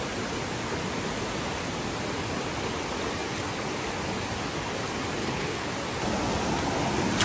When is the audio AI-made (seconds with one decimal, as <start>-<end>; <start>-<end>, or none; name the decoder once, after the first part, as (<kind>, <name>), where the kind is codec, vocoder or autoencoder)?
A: 5.2-5.7 (codec, HILCodec)